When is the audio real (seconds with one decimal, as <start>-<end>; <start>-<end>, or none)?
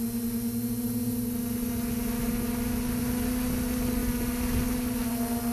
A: 0.0-5.5